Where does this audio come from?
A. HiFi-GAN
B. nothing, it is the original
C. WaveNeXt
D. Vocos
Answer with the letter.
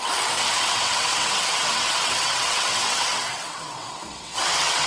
C